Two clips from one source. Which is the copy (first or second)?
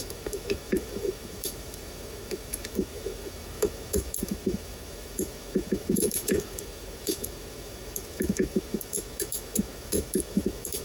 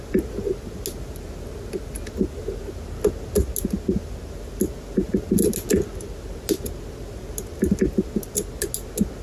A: first